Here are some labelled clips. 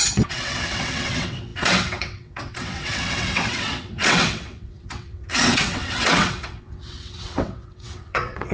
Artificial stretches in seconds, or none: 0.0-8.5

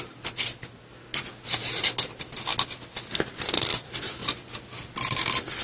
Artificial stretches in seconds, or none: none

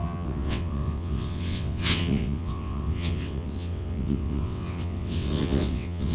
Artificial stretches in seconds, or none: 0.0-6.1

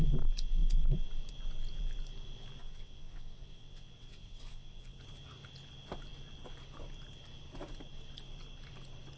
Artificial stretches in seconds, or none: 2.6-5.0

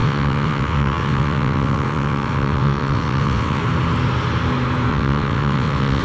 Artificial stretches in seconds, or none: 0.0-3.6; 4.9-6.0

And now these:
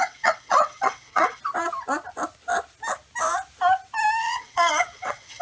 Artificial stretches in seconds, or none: 0.0-1.4; 4.2-5.4

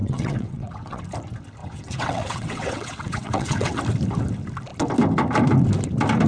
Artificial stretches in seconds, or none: 0.0-1.0; 1.6-3.8